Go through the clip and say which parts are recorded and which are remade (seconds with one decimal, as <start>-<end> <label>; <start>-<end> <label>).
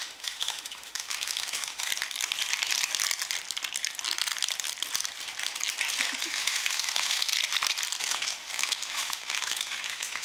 0.0-1.9 remade; 1.9-6.2 recorded; 6.2-7.3 remade; 7.3-8.0 recorded; 8.0-10.2 remade